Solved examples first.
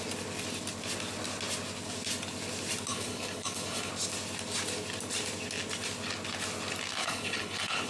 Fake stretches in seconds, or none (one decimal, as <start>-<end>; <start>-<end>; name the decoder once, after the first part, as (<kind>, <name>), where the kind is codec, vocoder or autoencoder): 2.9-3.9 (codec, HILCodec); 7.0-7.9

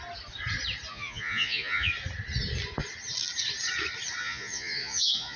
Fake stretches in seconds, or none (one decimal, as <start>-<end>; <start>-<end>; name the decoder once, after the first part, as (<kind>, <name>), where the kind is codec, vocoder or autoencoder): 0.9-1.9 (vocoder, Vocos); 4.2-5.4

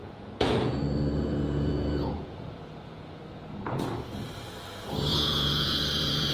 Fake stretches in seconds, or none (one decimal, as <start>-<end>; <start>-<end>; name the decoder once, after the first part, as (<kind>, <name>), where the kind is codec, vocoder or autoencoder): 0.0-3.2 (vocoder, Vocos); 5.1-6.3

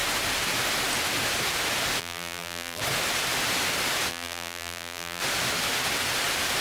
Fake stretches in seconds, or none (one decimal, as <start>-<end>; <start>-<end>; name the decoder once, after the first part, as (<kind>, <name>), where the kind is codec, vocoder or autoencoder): 2.0-2.8 (vocoder, BigVGAN v2); 4.1-5.2

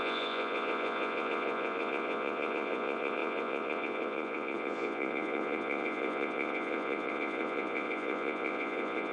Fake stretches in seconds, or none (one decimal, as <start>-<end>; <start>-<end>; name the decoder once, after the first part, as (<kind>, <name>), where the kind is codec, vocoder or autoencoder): 0.0-9.1 (vocoder, Vocos)